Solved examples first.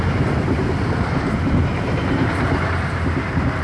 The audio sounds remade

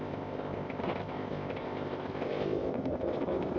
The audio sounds remade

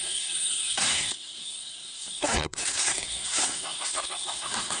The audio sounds remade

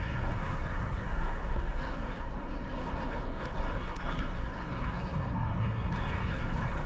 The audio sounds remade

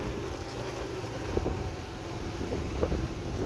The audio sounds recorded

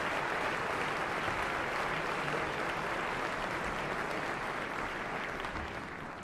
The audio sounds recorded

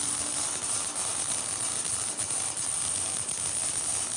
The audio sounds recorded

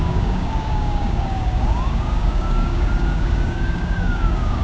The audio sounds remade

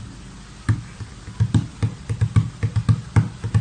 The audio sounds recorded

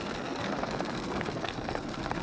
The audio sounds remade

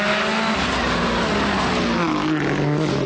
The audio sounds recorded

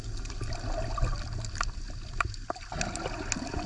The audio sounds recorded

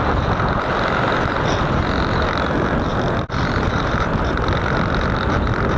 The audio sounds recorded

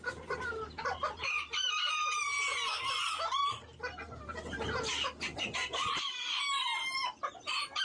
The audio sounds remade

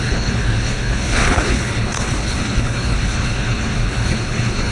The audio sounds remade